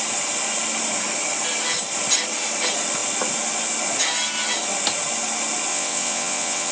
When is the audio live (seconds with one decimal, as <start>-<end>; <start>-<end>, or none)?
0.0-5.7